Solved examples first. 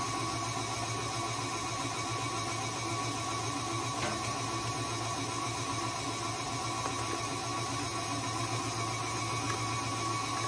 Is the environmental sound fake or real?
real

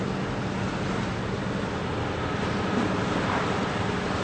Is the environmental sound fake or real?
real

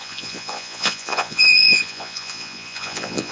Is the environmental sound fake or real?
fake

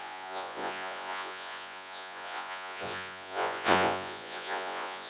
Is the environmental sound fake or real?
fake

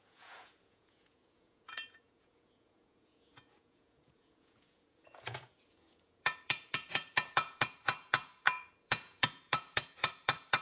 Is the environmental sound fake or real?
fake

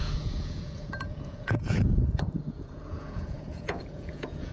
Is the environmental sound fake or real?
fake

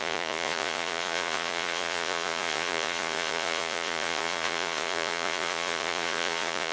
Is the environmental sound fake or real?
fake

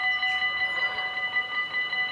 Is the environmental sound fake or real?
real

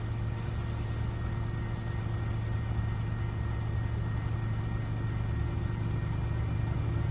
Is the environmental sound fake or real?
real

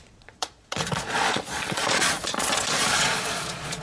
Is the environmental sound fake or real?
fake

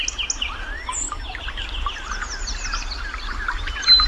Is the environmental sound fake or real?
real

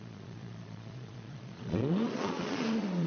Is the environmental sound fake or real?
fake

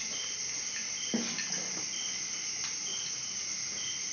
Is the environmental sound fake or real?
real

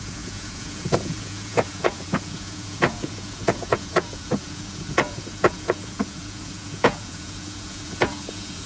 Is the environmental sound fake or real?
fake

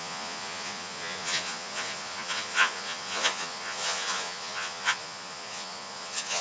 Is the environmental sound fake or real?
fake